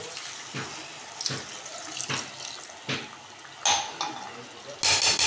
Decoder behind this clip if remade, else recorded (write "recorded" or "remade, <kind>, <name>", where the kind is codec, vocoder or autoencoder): recorded